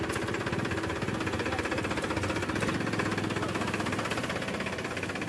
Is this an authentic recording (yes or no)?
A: yes